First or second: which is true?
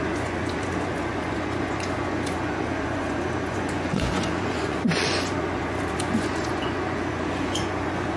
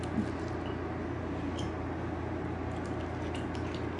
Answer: second